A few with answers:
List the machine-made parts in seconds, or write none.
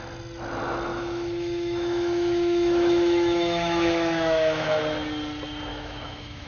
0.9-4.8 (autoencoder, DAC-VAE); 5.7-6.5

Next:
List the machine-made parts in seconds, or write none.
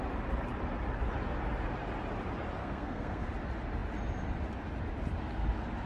2.6-3.3 (codec, SNAC)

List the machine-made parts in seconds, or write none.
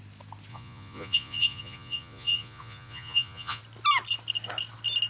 0.5-3.6 (vocoder, Vocos)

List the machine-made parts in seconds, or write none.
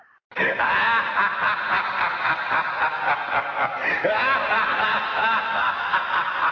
5.1-6.0 (autoencoder, DAC-VAE)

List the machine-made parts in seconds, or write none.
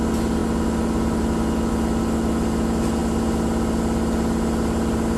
none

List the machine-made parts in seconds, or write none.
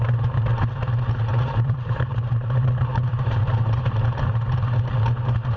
1.3-4.3 (vocoder, BigVGAN v2)